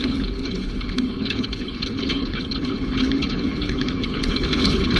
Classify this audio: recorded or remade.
remade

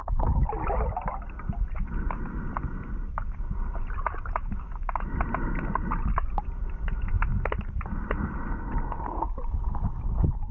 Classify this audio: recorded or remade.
recorded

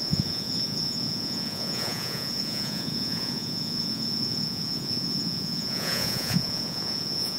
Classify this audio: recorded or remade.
remade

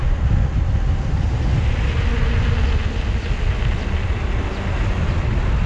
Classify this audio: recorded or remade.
recorded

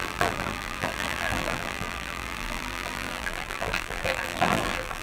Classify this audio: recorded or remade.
remade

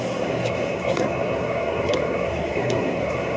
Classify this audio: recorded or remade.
remade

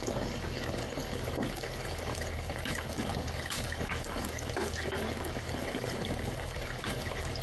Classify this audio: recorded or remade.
remade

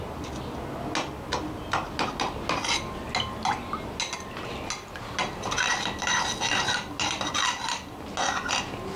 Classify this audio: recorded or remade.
recorded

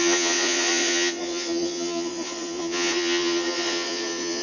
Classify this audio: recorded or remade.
remade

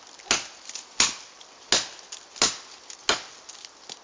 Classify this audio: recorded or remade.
recorded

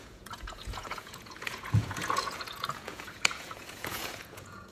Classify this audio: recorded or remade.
remade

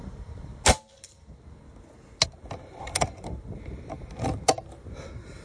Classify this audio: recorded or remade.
recorded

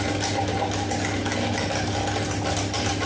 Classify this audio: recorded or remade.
recorded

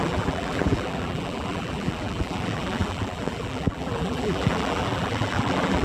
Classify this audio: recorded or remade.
remade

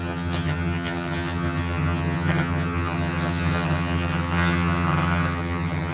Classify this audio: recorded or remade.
remade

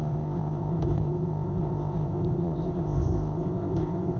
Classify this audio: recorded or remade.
remade